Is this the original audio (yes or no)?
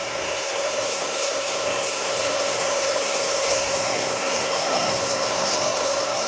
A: no